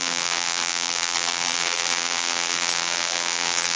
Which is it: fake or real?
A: fake